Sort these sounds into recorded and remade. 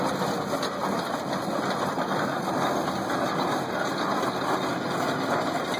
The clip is recorded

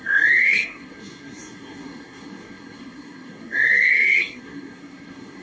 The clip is remade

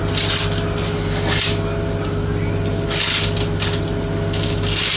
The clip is recorded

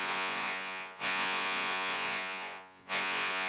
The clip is remade